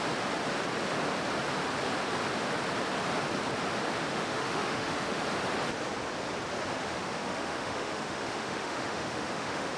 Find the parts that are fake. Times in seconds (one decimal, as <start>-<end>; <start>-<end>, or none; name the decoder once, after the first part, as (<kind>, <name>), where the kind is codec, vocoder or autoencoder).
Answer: 4.1-5.2 (autoencoder, DAC-VAE); 6.7-9.8